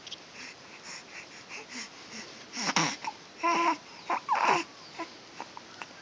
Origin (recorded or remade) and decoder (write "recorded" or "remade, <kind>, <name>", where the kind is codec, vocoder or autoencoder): recorded